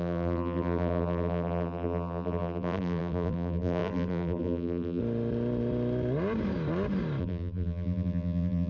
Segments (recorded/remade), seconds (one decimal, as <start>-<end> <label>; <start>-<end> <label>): 0.0-5.0 remade; 5.0-7.2 recorded; 7.2-8.7 remade